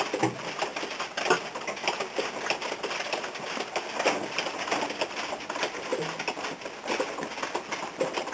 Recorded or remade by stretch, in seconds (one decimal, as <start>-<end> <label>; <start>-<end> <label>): 0.0-8.3 recorded